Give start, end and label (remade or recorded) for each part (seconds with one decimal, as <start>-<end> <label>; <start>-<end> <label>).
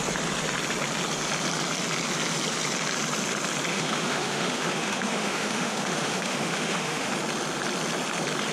0.0-3.7 recorded; 3.7-7.1 remade; 7.1-8.5 recorded